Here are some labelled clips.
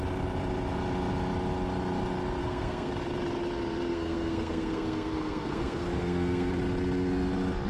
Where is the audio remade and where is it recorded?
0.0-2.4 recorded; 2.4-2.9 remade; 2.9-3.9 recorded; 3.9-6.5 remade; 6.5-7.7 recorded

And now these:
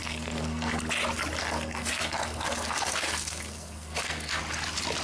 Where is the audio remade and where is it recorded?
0.0-0.8 remade; 0.8-1.4 recorded; 1.4-4.4 remade; 4.4-5.0 recorded

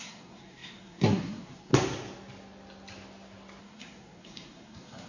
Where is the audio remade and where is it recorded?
0.0-1.7 remade; 1.7-3.6 recorded; 3.6-5.1 remade

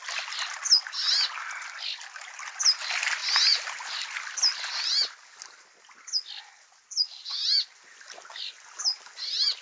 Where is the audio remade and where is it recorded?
0.0-9.6 recorded

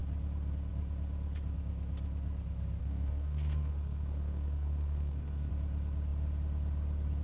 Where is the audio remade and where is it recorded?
0.0-2.8 recorded; 2.8-5.5 remade; 5.5-7.2 recorded

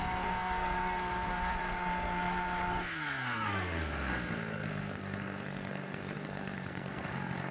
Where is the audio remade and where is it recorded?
0.0-7.5 remade

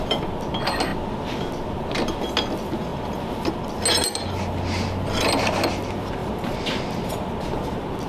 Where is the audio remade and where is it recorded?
0.0-8.1 recorded

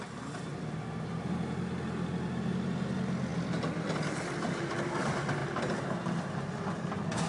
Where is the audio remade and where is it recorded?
0.0-7.3 recorded